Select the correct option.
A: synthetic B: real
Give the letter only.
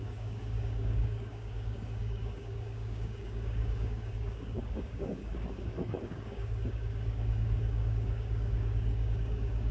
A